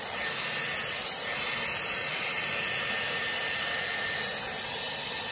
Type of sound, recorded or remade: recorded